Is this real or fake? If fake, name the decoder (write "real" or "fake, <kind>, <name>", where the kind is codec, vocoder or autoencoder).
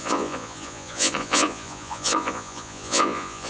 fake, vocoder, Vocos